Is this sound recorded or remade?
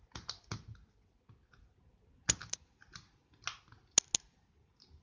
recorded